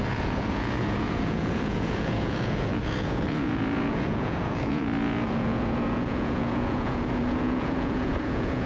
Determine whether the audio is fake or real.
fake